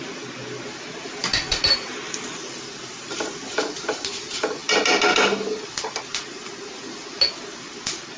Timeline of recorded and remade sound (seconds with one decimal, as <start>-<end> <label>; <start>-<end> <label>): 0.0-8.2 recorded